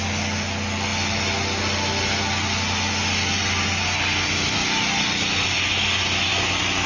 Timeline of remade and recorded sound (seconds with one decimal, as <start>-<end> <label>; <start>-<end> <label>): 0.0-6.9 recorded